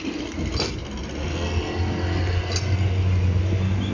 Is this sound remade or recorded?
recorded